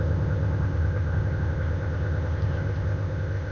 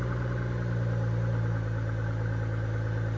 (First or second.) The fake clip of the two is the first